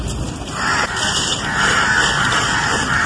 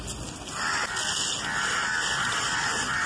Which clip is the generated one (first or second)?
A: first